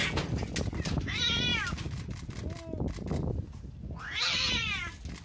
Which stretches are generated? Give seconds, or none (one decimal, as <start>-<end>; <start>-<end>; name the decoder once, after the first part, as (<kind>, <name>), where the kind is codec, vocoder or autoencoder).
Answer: none